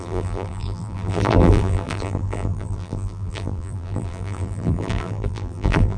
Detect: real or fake fake